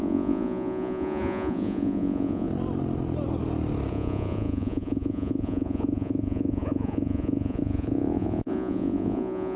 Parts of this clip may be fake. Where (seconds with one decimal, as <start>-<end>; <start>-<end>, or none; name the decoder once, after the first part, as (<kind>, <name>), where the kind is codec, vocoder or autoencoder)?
0.0-2.5 (vocoder, Vocos); 3.9-9.6